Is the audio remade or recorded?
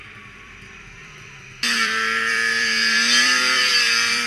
remade